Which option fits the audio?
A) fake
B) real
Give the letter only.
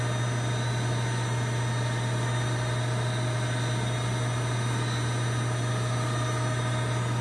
B